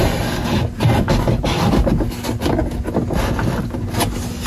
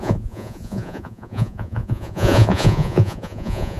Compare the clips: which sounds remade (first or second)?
second